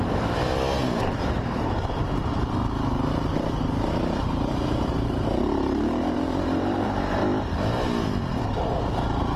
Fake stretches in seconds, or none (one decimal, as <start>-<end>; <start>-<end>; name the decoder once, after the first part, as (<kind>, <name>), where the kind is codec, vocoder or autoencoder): 0.0-0.5 (vocoder, BigVGAN v2); 1.0-2.6; 3.9-7.2; 8.9-9.4